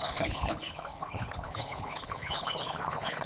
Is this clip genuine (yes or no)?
no